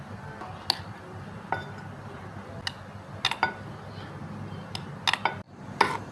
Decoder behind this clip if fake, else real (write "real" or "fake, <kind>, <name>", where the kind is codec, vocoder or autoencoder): real